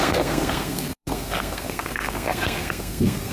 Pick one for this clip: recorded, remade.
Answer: remade